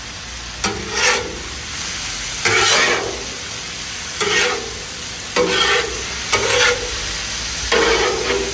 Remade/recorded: recorded